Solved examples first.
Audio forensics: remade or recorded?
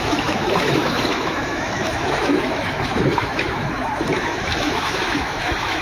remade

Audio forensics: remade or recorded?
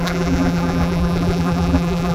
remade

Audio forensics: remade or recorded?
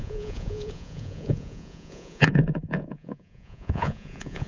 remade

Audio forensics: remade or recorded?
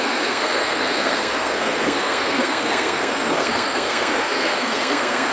remade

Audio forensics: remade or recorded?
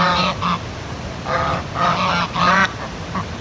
recorded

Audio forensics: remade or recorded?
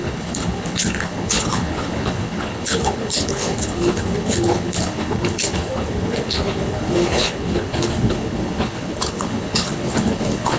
remade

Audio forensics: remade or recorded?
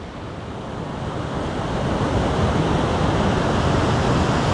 recorded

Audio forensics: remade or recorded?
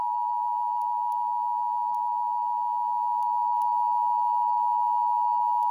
remade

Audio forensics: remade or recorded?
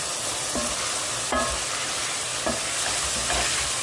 recorded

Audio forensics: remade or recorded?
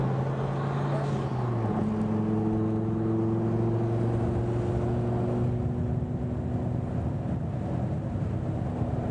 recorded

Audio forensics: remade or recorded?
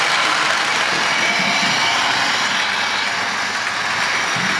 recorded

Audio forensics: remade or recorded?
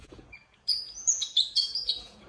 remade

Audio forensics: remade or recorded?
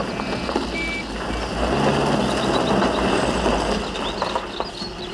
recorded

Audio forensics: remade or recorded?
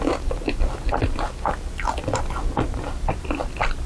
recorded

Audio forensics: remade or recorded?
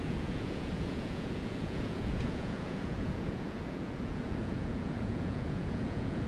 remade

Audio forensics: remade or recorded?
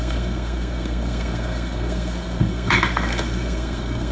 remade